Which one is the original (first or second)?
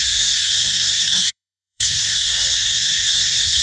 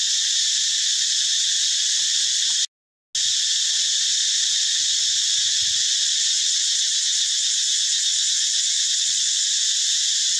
second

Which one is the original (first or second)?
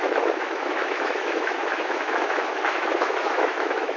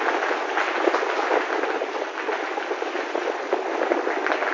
second